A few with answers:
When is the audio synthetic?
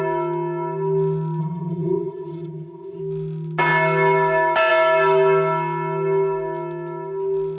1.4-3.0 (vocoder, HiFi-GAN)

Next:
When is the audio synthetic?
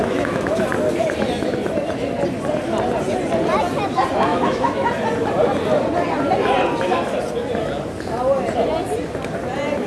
0.0-0.6 (autoencoder, DAC-VAE); 4.3-4.9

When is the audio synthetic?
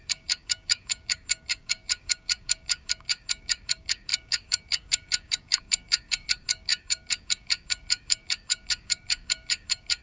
0.0-10.0 (codec, DAC)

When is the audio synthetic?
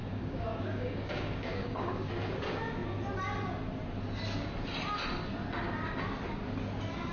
0.0-2.1 (codec, DAC)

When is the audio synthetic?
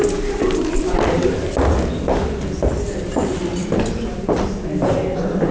none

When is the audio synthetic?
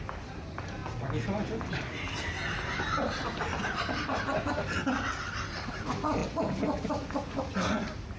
none